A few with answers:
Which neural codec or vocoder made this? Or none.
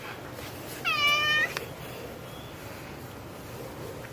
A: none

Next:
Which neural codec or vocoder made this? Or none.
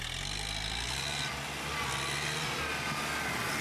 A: none